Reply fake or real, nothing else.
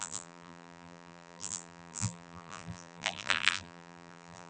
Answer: fake